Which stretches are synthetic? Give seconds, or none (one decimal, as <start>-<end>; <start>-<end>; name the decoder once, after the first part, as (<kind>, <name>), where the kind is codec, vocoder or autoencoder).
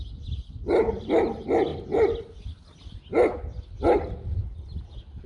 none